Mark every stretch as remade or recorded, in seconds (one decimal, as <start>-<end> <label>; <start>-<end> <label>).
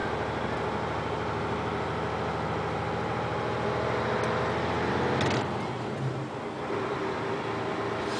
0.0-8.2 recorded